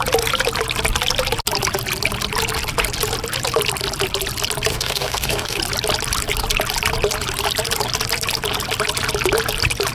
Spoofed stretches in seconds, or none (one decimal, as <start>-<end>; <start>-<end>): 4.7-5.6